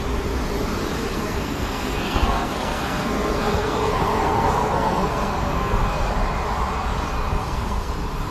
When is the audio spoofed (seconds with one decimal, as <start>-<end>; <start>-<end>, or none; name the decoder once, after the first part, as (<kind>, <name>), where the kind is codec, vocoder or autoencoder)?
1.1-6.1 (codec, SNAC); 7.4-7.9